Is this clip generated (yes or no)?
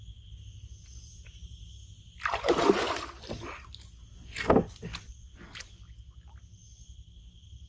no